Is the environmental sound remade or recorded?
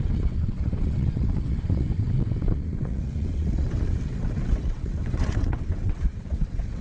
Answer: remade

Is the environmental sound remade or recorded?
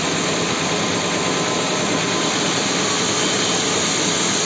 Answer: recorded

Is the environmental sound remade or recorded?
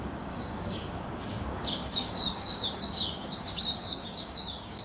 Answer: remade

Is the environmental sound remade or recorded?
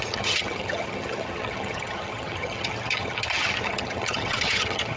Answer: remade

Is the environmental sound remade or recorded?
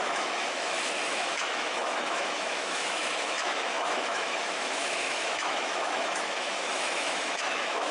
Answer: remade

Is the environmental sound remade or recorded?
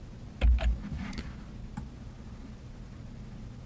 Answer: recorded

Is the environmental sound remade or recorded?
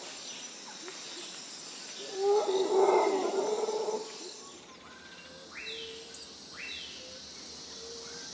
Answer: recorded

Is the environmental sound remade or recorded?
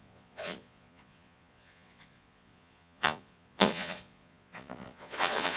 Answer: remade